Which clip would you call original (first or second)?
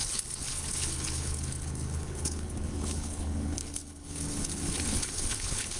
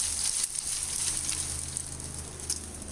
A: second